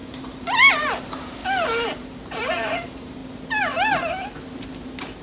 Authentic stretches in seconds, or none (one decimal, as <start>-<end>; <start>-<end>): 3.2-5.2